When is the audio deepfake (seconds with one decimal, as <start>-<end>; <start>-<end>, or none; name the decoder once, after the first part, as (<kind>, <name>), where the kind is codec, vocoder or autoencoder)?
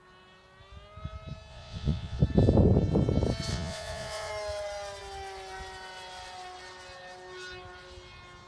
1.5-2.2 (vocoder, Vocos); 3.5-4.3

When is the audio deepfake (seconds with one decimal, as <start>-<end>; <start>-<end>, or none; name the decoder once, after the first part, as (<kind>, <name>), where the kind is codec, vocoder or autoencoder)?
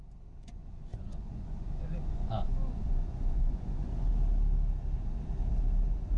0.4-4.1 (vocoder, Vocos)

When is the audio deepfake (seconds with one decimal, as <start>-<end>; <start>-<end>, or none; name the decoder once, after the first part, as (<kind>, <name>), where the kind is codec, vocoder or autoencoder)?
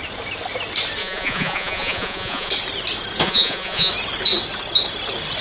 1.0-2.5 (vocoder, Vocos); 3.2-3.9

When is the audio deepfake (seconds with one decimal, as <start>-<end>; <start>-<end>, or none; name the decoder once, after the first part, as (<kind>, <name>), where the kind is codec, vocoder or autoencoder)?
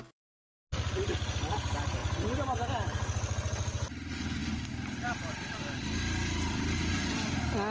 none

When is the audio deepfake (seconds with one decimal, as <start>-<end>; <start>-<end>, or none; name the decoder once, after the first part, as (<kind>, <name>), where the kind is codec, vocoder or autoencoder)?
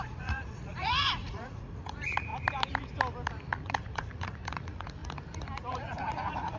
0.0-2.3 (vocoder, Vocos); 3.6-5.0; 5.7-6.6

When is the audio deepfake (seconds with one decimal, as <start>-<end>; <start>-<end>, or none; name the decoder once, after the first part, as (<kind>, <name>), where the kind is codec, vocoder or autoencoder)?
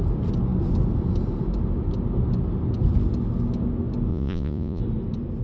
4.1-4.8 (vocoder, Vocos)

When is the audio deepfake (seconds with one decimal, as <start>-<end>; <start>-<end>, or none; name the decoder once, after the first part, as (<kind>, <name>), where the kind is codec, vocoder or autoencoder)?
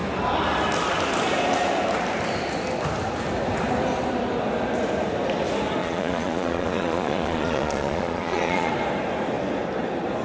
5.8-8.7 (vocoder, Vocos)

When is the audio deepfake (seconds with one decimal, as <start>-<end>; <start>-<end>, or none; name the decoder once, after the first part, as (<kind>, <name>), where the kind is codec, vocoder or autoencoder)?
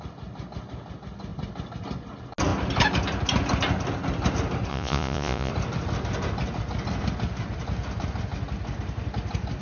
4.7-5.5 (vocoder, Vocos)